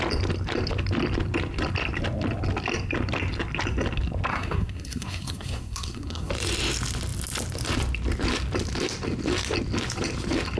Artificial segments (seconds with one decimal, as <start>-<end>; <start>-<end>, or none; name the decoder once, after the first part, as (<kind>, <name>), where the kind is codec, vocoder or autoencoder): 4.3-6.3 (codec, SNAC)